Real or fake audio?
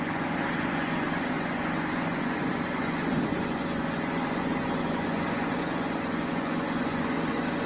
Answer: fake